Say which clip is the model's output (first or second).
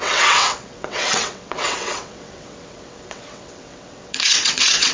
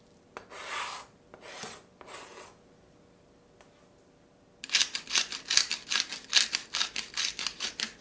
first